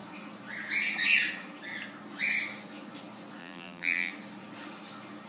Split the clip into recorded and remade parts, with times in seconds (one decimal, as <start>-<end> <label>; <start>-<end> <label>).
0.0-3.4 recorded; 3.4-4.1 remade; 4.1-5.3 recorded